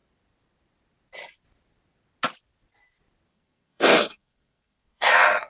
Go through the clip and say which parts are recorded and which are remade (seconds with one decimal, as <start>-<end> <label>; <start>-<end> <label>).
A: 0.0-3.3 recorded; 3.3-5.5 remade